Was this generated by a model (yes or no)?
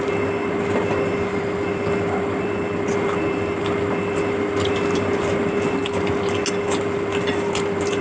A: no